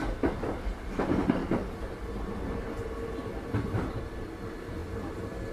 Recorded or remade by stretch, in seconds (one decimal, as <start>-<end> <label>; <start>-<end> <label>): 0.0-1.4 remade; 1.4-3.4 recorded; 3.4-4.8 remade; 4.8-5.5 recorded